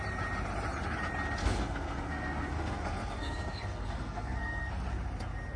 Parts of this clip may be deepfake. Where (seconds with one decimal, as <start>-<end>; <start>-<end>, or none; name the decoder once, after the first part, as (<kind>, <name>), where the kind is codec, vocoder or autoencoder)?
1.4-4.7 (codec, SNAC)

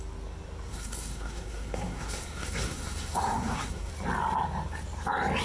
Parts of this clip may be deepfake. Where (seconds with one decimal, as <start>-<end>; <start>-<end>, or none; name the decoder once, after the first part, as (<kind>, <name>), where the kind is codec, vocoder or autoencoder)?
0.7-3.9 (codec, SNAC)

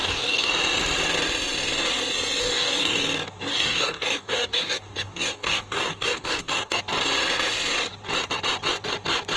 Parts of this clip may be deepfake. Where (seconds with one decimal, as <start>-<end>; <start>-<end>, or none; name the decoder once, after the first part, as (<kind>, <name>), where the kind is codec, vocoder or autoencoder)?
0.0-0.5 (codec, DAC); 2.4-3.0; 3.5-6.8

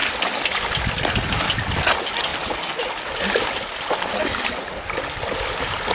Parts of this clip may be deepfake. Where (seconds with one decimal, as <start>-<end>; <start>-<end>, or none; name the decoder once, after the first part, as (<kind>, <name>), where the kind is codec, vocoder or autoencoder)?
none

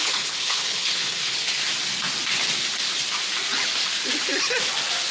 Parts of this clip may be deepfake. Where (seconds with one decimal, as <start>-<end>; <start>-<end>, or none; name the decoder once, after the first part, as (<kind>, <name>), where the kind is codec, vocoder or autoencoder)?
0.0-1.6 (codec, HILCodec)